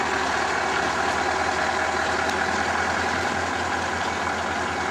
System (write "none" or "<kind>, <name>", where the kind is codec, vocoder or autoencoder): none